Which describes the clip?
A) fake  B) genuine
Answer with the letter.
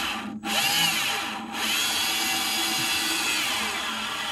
B